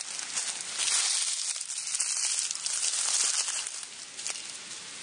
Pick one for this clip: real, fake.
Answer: real